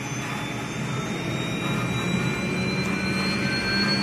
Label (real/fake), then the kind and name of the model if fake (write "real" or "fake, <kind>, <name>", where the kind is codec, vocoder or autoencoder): real